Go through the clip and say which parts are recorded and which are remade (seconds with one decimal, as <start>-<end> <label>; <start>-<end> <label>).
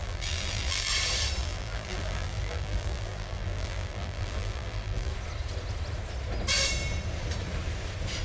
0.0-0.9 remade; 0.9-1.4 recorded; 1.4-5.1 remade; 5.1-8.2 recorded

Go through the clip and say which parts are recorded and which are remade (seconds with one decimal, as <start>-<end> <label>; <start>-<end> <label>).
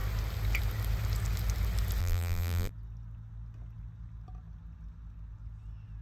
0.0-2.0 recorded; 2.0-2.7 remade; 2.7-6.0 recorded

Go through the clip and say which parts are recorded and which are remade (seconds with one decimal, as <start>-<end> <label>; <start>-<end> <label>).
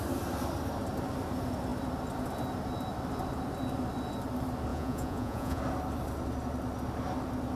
0.0-4.7 recorded; 4.7-5.6 remade; 5.6-7.6 recorded